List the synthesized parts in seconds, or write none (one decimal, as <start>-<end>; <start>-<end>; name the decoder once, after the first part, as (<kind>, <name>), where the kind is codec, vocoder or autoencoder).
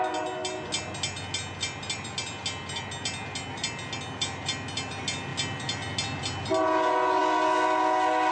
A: none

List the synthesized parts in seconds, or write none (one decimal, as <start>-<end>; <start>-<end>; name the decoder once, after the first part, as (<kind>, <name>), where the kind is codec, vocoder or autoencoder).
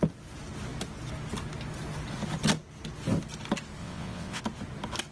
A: 3.8-4.4 (vocoder, WaveNeXt)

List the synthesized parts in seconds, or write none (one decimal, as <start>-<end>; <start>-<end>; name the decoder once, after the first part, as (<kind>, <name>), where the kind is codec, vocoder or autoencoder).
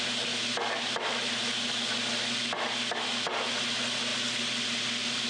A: none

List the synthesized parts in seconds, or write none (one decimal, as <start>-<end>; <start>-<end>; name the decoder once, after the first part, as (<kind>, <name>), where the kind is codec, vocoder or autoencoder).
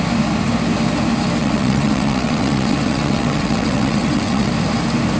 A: 1.4-4.5 (vocoder, WaveNeXt)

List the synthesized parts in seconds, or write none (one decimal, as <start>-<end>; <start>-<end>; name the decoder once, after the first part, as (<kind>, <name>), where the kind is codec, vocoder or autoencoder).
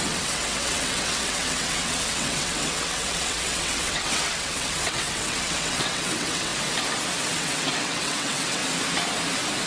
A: 0.0-6.5 (vocoder, WaveNeXt); 7.2-8.6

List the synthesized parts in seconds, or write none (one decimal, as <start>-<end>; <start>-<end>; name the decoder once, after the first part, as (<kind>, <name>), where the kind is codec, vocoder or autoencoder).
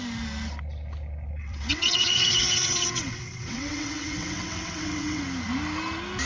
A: 1.4-5.2 (vocoder, WaveNeXt)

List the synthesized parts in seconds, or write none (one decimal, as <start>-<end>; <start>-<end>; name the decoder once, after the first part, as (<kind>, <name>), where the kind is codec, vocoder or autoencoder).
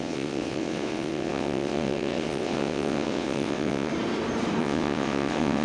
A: 0.0-3.9 (vocoder, WaveNeXt); 4.6-5.6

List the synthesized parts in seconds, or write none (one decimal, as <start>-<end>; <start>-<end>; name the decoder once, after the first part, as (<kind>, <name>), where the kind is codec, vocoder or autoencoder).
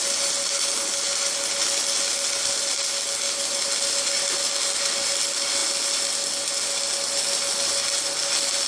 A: none